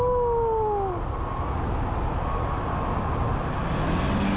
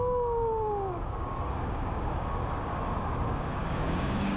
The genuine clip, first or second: first